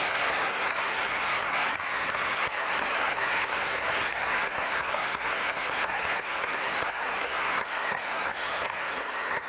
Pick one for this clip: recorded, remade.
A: remade